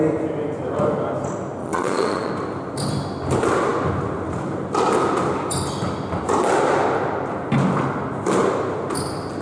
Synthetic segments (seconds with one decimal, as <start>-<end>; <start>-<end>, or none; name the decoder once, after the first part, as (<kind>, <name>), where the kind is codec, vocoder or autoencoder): 1.6-2.3 (vocoder, Vocos)